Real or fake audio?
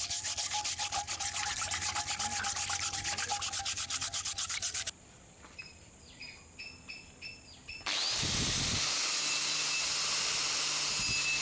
real